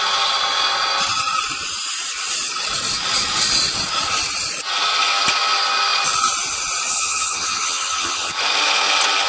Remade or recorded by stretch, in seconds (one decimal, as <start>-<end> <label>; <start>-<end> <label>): 0.0-6.9 recorded; 6.9-8.4 remade; 8.4-9.3 recorded